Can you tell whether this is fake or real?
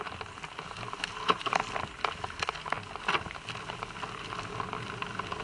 real